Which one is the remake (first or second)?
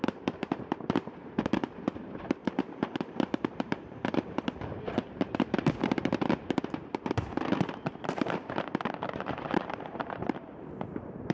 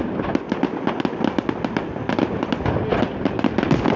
first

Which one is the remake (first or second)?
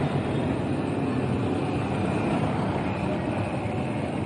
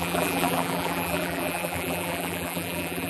second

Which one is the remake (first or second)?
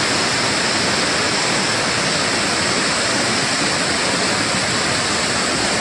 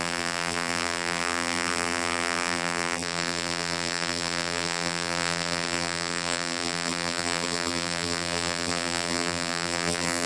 second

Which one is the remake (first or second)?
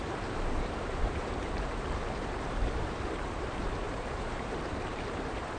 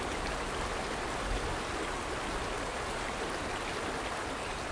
first